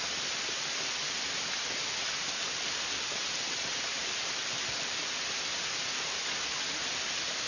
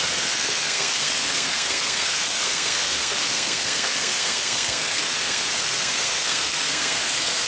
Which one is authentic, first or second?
first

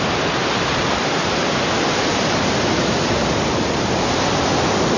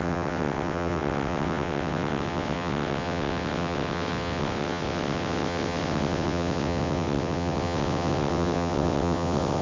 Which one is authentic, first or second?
first